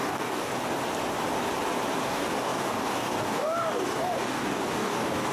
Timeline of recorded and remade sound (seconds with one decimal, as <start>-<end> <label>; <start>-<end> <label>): 0.0-0.5 remade; 0.5-2.0 recorded; 2.0-5.3 remade